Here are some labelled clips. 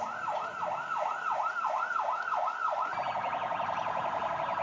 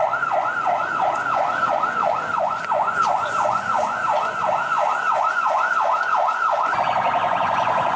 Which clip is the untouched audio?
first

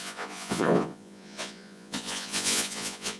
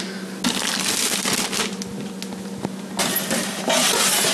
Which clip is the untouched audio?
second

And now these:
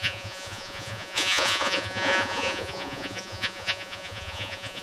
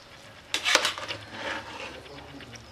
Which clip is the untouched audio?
second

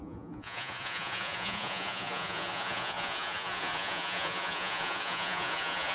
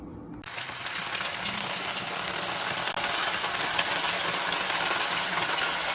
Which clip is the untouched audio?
second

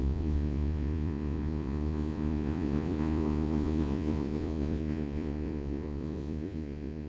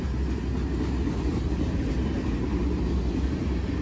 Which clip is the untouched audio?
second